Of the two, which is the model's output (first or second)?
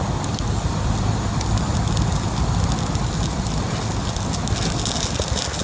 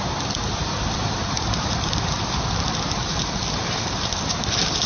second